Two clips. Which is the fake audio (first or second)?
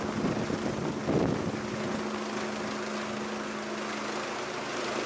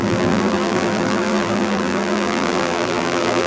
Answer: second